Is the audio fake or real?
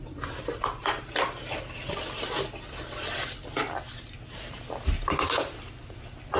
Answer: real